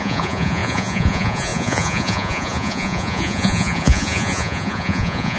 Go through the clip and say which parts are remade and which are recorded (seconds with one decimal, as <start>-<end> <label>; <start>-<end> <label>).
0.0-5.4 remade